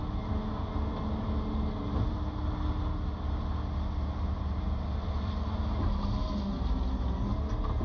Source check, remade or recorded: recorded